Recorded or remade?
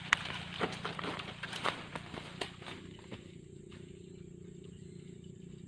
recorded